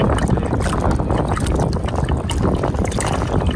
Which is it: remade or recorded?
recorded